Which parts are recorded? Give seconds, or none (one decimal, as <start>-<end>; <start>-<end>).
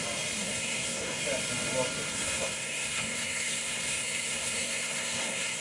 0.0-0.4; 1.2-2.1